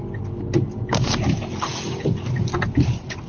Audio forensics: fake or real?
real